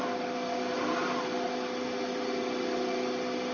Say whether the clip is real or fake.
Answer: real